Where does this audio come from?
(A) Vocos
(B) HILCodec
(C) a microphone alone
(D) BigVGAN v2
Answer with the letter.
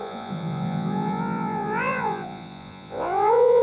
A